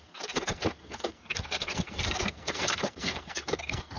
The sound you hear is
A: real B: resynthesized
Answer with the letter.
B